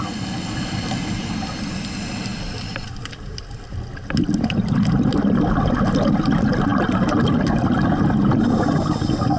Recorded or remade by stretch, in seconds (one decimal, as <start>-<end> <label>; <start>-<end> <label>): 0.0-9.4 recorded